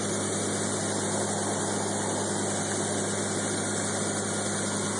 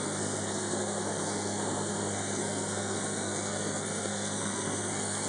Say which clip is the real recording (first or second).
first